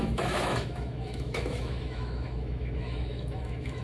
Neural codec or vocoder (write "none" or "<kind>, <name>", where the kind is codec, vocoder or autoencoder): autoencoder, DAC-VAE